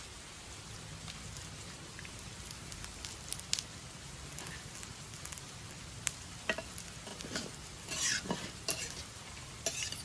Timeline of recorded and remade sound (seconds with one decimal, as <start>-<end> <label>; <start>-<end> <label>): 0.0-10.0 recorded